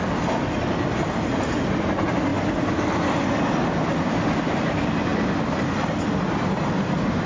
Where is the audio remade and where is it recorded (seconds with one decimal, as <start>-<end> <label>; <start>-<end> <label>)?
0.0-7.3 recorded